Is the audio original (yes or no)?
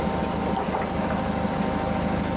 yes